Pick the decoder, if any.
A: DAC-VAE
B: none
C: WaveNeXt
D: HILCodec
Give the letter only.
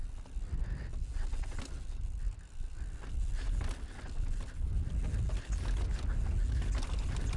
B